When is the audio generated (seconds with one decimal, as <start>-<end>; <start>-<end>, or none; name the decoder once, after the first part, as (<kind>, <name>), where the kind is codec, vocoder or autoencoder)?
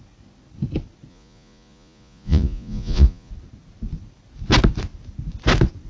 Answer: 1.1-3.3 (vocoder, Vocos)